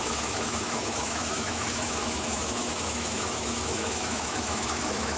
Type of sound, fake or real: fake